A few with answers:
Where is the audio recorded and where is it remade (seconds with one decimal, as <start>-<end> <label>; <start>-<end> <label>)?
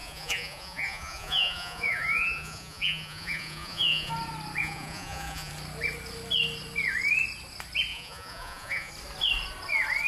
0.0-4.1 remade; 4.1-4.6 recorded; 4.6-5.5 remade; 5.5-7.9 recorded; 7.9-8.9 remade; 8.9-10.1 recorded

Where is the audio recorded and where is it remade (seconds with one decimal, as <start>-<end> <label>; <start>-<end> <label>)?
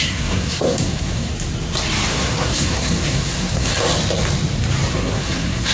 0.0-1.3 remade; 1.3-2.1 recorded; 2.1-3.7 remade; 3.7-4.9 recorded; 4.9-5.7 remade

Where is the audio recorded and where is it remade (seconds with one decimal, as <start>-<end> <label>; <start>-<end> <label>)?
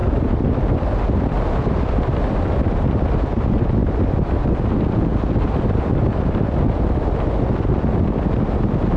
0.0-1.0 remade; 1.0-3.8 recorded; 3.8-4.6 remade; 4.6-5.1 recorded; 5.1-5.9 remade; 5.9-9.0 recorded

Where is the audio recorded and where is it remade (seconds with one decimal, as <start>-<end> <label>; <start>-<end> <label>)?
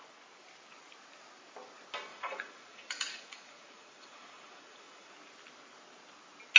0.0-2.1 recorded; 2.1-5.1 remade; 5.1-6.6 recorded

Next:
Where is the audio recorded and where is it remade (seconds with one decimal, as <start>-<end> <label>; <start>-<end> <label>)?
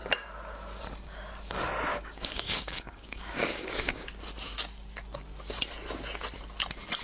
0.0-1.9 recorded; 1.9-4.1 remade; 4.1-7.0 recorded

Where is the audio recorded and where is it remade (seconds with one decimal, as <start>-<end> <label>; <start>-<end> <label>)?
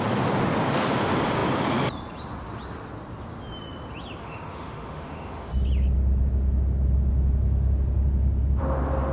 0.0-4.2 recorded; 4.2-5.5 remade; 5.5-9.1 recorded